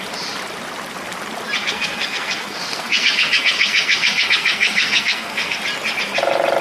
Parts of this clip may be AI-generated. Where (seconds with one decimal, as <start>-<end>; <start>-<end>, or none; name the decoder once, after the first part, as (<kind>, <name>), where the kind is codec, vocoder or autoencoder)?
1.6-5.6 (codec, SNAC)